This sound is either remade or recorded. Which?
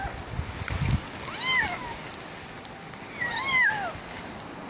recorded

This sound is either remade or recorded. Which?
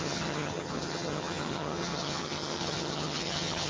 remade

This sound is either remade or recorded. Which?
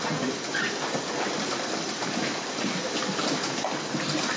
recorded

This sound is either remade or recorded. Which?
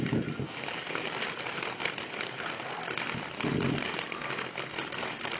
recorded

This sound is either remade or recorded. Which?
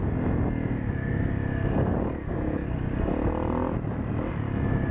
recorded